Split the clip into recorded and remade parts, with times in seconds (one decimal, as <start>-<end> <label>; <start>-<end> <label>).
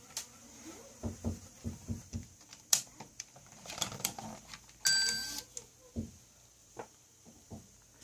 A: 0.0-0.4 recorded; 0.4-4.4 remade; 4.4-6.6 recorded; 6.6-7.5 remade; 7.5-8.0 recorded